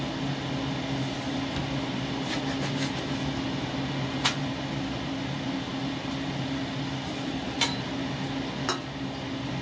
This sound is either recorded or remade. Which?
recorded